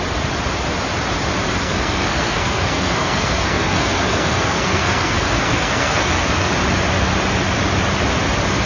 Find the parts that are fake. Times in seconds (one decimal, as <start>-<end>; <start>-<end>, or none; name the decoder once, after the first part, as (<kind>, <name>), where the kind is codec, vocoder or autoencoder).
1.6-6.5 (codec, SNAC)